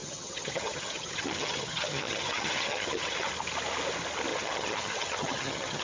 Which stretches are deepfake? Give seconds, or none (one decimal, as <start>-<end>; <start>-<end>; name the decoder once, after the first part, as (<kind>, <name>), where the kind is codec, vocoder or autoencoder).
0.0-3.3 (vocoder, HiFi-GAN); 4.3-5.8